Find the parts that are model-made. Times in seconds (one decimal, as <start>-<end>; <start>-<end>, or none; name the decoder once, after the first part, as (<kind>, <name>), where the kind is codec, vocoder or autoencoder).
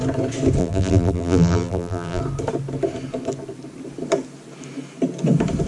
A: 0.6-2.2 (vocoder, BigVGAN v2)